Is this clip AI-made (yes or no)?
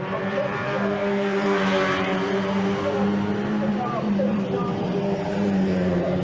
yes